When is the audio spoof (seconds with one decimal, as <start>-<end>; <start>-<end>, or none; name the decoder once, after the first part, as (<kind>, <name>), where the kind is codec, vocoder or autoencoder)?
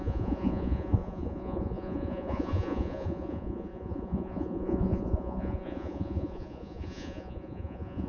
0.0-8.1 (vocoder, Vocos)